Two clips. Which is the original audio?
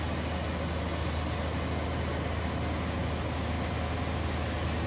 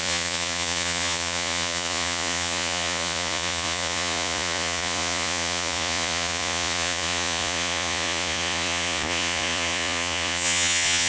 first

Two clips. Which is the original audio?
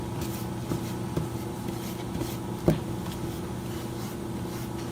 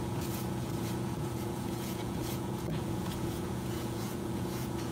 first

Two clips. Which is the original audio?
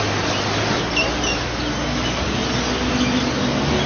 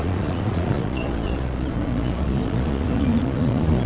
first